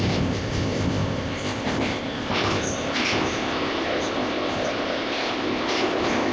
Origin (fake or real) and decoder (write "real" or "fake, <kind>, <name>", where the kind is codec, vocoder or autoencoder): fake, codec, ZipCodec